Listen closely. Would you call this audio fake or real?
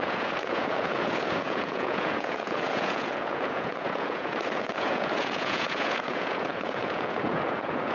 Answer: fake